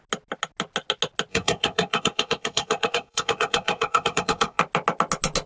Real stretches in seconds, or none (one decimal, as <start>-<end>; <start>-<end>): 0.0-1.3; 4.6-5.5